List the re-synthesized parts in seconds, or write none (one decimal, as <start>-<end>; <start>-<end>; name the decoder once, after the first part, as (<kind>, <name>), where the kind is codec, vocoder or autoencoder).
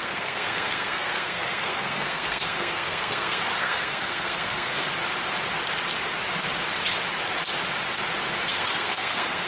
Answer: 0.0-4.7 (codec, SNAC); 8.5-9.5